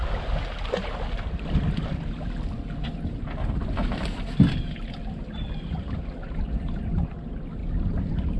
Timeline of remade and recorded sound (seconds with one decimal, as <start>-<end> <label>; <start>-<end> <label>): 0.0-8.4 recorded